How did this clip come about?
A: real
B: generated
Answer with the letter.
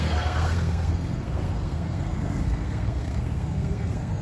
B